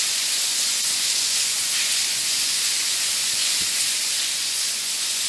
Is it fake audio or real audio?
fake